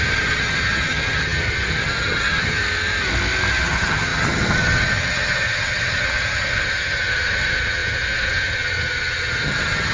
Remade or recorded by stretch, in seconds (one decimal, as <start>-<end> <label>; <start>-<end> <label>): 0.0-2.6 remade; 2.6-3.5 recorded; 3.5-9.9 remade